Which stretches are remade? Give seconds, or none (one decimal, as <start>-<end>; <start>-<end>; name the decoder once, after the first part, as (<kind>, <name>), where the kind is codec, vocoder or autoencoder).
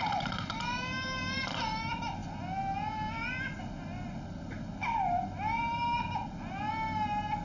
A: none